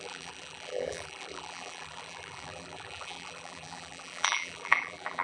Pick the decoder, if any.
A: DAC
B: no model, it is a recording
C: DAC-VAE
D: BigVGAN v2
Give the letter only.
D